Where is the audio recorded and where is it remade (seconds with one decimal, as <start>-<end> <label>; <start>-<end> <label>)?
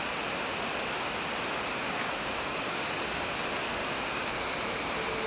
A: 0.0-1.8 recorded; 1.8-3.3 remade; 3.3-3.8 recorded; 3.8-4.3 remade; 4.3-5.3 recorded